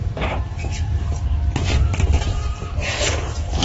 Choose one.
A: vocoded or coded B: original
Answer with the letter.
B